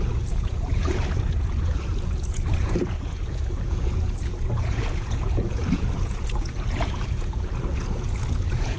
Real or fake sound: fake